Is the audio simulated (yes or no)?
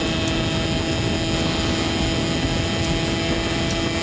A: no